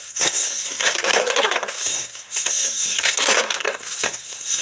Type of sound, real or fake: fake